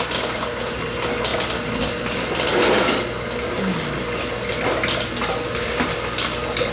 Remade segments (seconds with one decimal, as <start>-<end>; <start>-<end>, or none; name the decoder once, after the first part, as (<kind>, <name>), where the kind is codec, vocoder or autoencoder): none